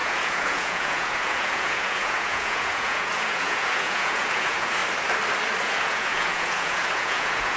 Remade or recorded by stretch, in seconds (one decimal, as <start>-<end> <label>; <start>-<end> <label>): 0.0-4.8 remade; 4.8-5.6 recorded; 5.6-7.6 remade